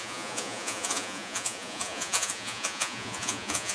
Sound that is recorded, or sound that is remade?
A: remade